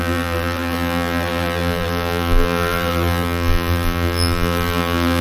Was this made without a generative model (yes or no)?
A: no